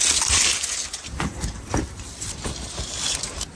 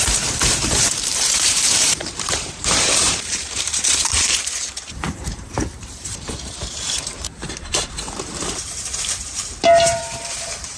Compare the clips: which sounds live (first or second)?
first